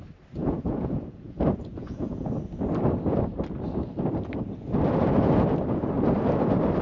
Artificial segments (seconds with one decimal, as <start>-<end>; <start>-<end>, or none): 0.4-2.3